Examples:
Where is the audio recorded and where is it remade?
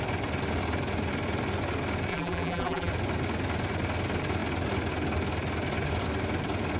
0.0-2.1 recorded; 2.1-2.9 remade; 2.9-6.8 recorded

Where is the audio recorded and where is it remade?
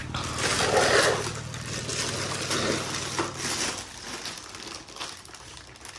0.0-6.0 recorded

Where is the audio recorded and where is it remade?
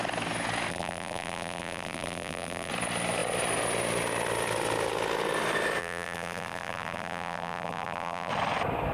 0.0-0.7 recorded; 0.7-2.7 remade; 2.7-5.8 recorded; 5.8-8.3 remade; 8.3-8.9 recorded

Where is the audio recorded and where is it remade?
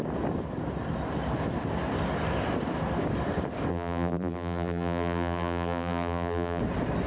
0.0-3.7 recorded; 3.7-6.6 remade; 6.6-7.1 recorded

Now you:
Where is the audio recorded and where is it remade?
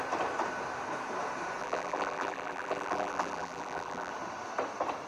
0.0-1.6 recorded; 1.6-4.1 remade; 4.1-5.1 recorded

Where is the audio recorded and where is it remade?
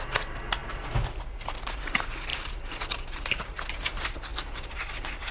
0.0-2.3 recorded; 2.3-3.2 remade; 3.2-5.3 recorded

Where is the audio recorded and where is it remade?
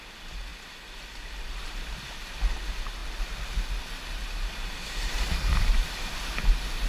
0.0-4.6 recorded; 4.6-6.1 remade; 6.1-6.9 recorded